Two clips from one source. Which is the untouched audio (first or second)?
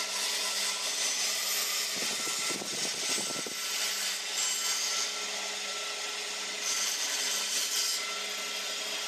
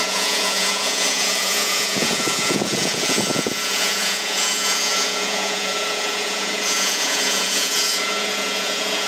first